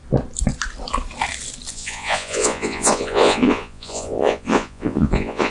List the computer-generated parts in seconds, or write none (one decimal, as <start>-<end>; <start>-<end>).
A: 1.7-5.5